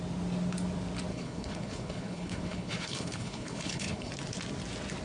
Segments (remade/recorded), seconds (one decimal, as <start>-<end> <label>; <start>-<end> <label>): 0.0-1.1 recorded; 1.1-4.1 remade; 4.1-5.0 recorded